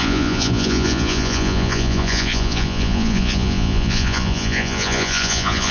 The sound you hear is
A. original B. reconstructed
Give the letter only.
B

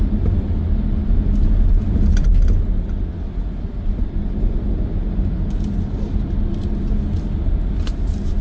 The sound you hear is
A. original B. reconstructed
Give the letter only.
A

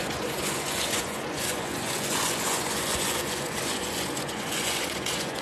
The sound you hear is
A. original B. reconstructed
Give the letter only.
B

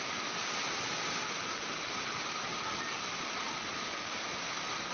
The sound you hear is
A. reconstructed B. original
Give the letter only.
B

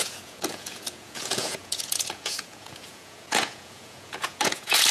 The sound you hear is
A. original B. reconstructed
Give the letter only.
B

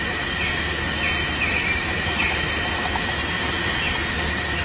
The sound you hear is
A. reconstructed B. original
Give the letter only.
B